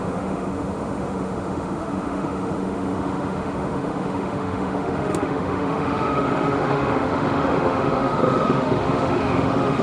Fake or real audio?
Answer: fake